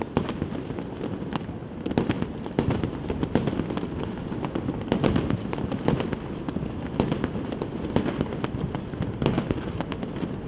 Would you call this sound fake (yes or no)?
no